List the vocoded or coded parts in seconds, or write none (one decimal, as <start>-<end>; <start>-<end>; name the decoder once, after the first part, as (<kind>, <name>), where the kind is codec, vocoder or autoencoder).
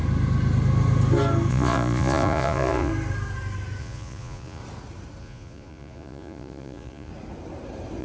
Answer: 1.5-2.9 (vocoder, Vocos); 3.8-4.6; 5.2-7.1